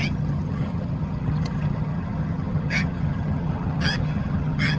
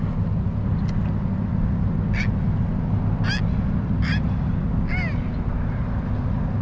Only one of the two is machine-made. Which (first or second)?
first